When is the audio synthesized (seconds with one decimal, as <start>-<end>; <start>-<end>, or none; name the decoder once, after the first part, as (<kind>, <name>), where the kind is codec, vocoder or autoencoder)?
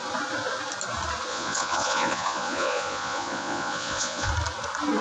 1.3-4.3 (vocoder, Vocos)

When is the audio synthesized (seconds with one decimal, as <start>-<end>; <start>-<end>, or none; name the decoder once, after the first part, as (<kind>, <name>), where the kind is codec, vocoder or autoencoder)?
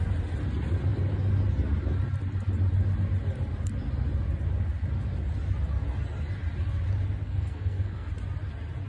7.2-8.1 (codec, SNAC)